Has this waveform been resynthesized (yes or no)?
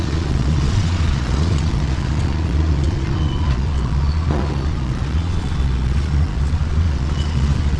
yes